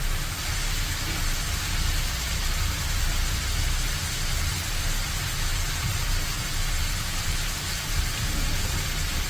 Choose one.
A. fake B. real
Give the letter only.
A